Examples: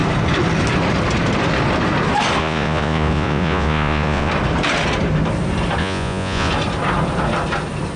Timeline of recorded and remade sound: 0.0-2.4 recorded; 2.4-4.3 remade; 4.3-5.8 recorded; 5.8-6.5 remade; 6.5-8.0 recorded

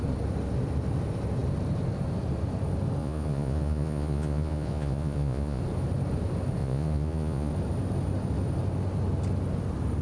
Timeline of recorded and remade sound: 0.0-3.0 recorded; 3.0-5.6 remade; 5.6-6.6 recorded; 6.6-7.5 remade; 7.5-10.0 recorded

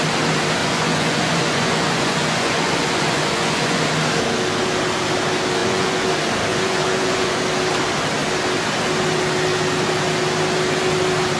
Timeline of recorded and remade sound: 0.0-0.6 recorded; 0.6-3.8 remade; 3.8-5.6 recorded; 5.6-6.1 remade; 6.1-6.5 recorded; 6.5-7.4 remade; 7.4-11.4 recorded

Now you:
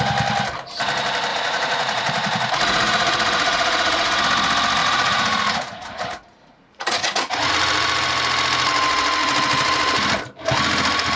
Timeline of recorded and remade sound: 0.0-1.3 recorded; 1.3-4.2 remade; 4.2-4.8 recorded; 4.8-7.5 remade; 7.5-11.2 recorded

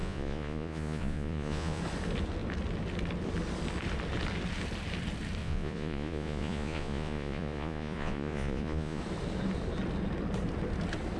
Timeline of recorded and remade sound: 0.0-1.8 remade; 1.8-5.4 recorded; 5.4-9.0 remade; 9.0-11.2 recorded

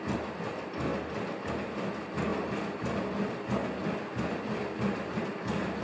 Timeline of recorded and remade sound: 0.0-5.8 recorded

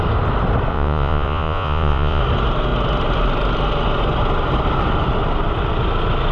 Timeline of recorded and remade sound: 0.0-0.7 recorded; 0.7-2.2 remade; 2.2-6.3 recorded

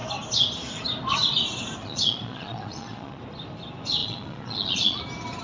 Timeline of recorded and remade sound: 0.0-1.8 recorded; 1.8-3.2 remade; 3.2-4.0 recorded; 4.0-5.0 remade; 5.0-5.4 recorded